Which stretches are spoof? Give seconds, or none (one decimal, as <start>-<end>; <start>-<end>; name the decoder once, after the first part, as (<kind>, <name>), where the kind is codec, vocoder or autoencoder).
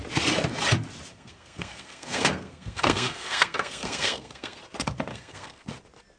1.1-4.6 (codec, SNAC); 5.1-5.7